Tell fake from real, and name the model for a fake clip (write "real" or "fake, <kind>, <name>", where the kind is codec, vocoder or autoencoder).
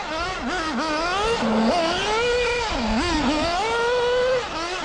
real